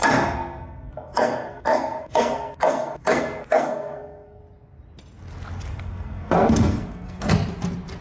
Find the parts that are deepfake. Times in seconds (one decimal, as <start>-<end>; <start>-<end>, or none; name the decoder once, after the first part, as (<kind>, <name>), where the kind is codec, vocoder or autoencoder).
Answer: 0.0-4.4 (codec, SNAC); 5.7-7.3